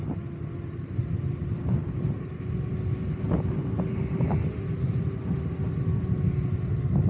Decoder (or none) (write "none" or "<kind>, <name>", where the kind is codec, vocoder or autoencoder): none